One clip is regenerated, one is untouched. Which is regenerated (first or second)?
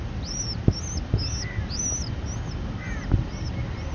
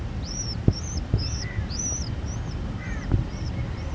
second